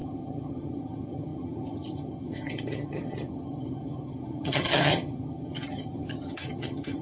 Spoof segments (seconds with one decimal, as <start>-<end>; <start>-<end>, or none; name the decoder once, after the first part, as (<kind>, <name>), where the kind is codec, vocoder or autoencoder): 0.0-7.0 (vocoder, HiFi-GAN)

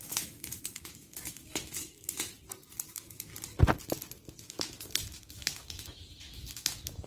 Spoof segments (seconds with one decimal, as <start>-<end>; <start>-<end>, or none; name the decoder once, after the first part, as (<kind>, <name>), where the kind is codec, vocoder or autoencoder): 0.0-2.3 (autoencoder, DAC-VAE); 2.9-3.3; 4.4-7.1

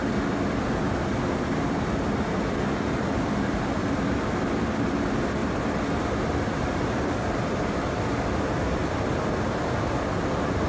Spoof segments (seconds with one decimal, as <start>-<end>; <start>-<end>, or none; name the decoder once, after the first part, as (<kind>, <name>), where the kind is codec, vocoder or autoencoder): 0.6-2.6 (vocoder, BigVGAN v2); 5.4-7.0; 8.8-9.9

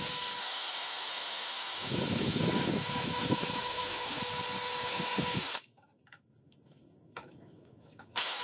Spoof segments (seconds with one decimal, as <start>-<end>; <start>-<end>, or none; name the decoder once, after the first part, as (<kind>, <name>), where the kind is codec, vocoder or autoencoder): 0.4-4.2 (autoencoder, DAC-VAE); 4.8-8.4

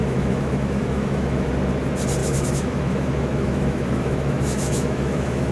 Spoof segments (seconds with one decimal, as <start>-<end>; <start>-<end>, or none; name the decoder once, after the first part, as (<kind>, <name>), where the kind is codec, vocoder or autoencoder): 0.0-1.5 (autoencoder, DAC-VAE); 2.2-5.5